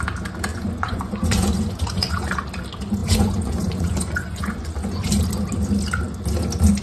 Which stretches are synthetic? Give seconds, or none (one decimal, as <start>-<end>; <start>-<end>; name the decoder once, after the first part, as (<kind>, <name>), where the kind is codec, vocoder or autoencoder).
0.5-2.3 (vocoder, Vocos); 3.0-5.1